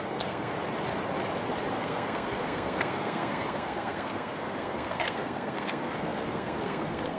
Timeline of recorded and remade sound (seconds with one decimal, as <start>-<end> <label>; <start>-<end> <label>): 0.0-0.5 remade; 0.5-1.7 recorded; 1.7-7.2 remade